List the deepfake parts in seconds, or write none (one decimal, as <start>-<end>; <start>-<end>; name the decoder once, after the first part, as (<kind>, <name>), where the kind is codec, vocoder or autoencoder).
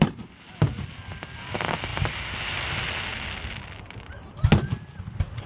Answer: none